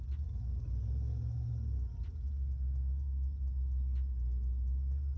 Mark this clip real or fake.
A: real